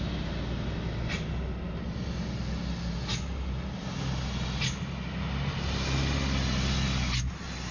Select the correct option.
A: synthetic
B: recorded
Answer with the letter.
B